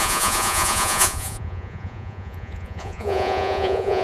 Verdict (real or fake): fake